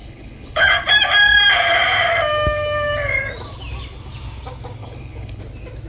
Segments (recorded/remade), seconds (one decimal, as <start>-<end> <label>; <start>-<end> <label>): 0.0-0.7 remade; 0.7-4.8 recorded; 4.8-5.4 remade; 5.4-5.9 recorded